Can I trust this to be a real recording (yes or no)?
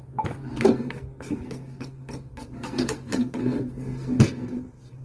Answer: no